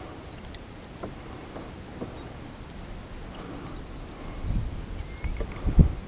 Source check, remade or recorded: recorded